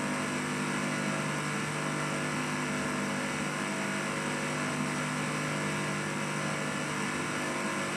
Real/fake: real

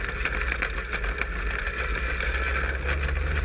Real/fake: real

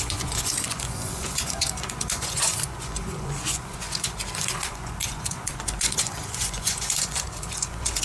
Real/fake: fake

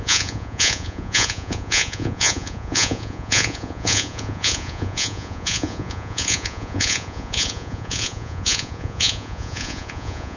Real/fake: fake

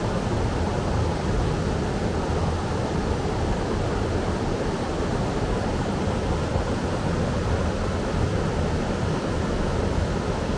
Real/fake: real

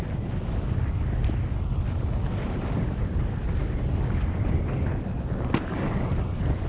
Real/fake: real